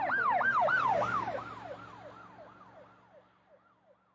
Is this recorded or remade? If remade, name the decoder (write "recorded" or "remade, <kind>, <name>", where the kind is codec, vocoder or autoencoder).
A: recorded